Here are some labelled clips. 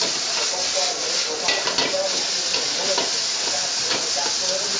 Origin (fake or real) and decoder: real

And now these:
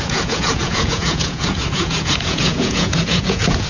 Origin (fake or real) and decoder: fake, vocoder, Vocos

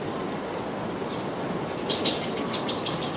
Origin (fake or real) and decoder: real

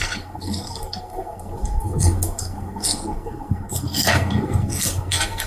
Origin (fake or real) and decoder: fake, codec, SNAC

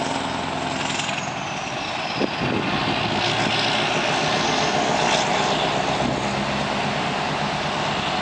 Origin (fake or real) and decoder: real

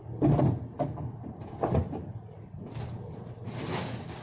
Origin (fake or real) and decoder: real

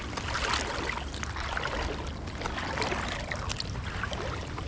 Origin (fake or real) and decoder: real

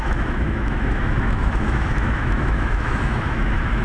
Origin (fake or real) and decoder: fake, autoencoder, DAC-VAE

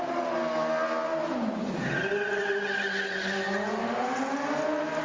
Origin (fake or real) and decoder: real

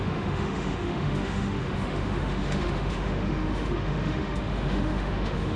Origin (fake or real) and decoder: fake, autoencoder, DAC-VAE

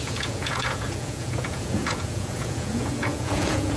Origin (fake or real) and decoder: fake, vocoder, Vocos